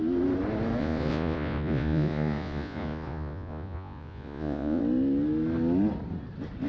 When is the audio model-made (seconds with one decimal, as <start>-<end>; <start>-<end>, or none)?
0.8-4.8